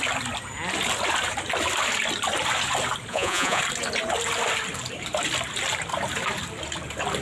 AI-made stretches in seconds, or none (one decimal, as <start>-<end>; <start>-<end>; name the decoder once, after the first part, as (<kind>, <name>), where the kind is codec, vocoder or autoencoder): 3.1-3.6 (vocoder, Vocos)